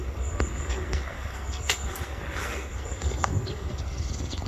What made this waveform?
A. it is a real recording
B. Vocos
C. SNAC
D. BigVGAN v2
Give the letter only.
C